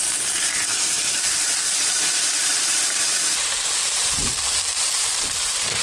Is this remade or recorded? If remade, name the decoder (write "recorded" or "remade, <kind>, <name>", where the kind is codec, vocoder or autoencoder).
remade, vocoder, BigVGAN v2